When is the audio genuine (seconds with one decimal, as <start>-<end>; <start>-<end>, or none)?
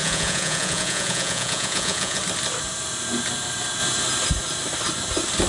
2.2-5.5